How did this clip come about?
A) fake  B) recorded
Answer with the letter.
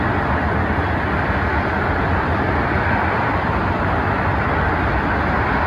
B